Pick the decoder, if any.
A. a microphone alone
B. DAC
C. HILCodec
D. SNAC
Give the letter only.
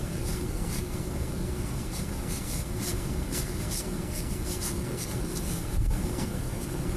D